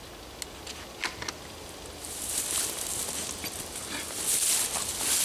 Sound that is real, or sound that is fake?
real